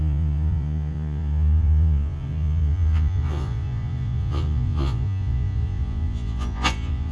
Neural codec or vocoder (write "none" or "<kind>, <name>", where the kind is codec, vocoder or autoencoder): vocoder, Vocos